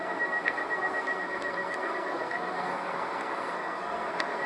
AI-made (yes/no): yes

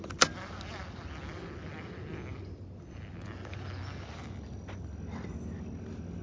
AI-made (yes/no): no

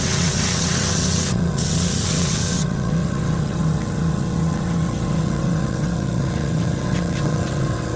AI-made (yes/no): yes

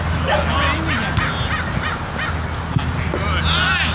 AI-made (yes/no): no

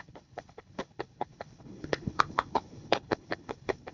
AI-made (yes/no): yes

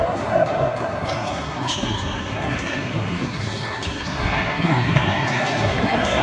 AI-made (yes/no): yes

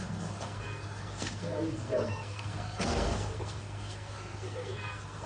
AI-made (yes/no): yes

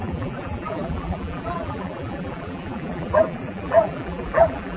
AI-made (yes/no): yes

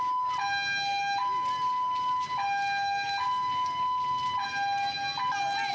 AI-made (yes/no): no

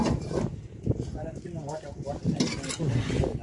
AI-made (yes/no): no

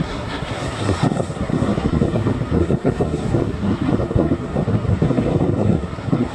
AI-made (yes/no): yes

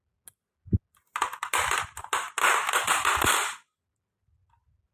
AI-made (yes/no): no